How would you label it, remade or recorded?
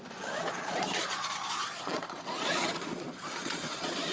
remade